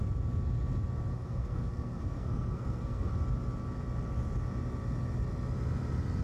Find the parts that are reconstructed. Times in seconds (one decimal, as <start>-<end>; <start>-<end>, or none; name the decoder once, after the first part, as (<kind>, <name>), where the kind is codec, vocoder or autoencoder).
1.1-3.1 (codec, SNAC)

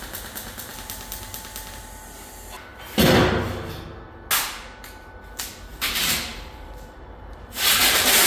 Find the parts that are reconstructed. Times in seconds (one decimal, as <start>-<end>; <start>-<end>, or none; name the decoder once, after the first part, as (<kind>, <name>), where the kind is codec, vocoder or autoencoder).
5.7-8.3 (vocoder, BigVGAN v2)

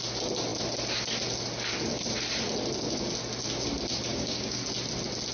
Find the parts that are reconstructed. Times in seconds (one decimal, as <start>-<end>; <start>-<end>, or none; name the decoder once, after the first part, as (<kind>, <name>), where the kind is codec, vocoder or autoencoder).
4.1-4.6 (codec, DAC)

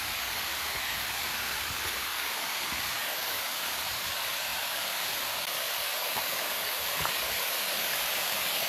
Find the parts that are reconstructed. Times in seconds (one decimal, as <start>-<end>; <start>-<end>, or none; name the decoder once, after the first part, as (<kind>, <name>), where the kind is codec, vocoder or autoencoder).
0.0-8.7 (codec, DAC)

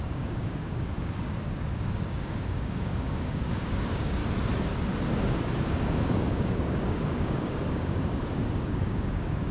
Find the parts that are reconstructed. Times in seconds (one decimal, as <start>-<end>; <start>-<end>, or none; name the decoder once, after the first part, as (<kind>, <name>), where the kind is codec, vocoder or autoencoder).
0.0-4.2 (codec, DAC); 5.1-9.5